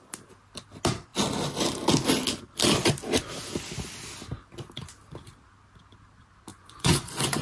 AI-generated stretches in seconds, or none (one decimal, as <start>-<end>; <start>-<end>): 6.5-7.4